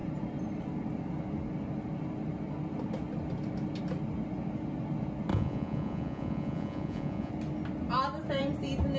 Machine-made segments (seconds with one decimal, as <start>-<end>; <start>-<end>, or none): 5.3-7.3